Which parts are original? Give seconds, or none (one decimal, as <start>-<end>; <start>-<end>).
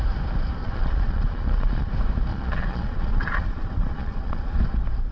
0.0-0.6; 1.9-2.3; 4.6-5.1